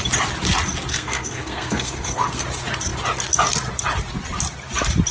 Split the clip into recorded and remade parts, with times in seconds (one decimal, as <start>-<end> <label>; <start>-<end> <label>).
0.0-0.9 recorded; 0.9-2.4 remade; 2.4-5.1 recorded